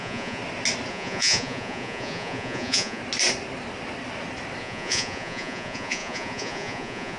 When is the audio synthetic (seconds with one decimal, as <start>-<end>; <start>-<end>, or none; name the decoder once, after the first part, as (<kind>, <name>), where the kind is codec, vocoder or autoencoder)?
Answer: 0.0-0.4 (vocoder, Vocos); 0.9-3.0; 4.6-7.2